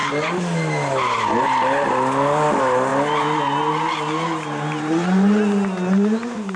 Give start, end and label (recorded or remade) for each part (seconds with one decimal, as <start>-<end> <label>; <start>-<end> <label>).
0.0-6.6 recorded